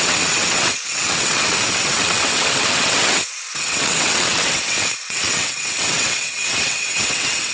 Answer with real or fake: fake